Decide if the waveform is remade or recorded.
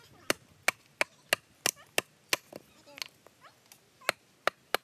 recorded